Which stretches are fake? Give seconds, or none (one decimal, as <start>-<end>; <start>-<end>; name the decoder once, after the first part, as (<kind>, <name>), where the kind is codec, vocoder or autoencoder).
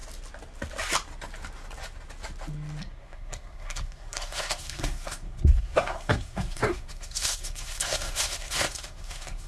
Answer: 2.8-9.5 (codec, SNAC)